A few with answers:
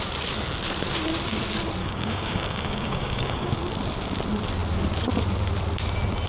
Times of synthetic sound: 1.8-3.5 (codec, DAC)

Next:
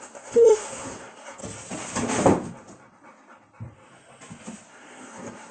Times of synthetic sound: 0.0-1.4 (codec, SNAC); 4.7-5.5

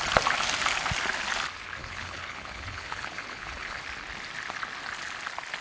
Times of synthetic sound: 1.8-3.8 (codec, HILCodec)

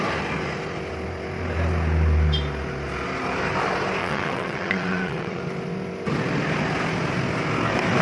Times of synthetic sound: 4.0-5.4 (vocoder, WaveNeXt)

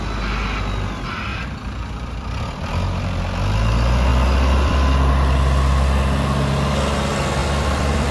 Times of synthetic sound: 1.3-3.2 (vocoder, BigVGAN v2); 4.1-5.1; 7.4-8.1